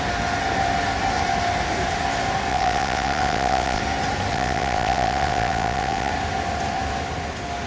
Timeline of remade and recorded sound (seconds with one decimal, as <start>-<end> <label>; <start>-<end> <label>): 0.0-2.5 recorded; 2.5-3.8 remade; 3.8-4.3 recorded; 4.3-6.1 remade; 6.1-7.7 recorded